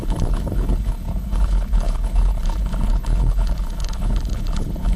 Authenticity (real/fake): fake